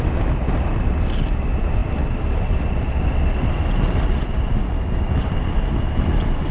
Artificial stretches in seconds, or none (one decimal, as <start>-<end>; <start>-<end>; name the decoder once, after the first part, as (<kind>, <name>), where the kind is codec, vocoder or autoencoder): none